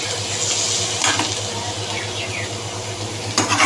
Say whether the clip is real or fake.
real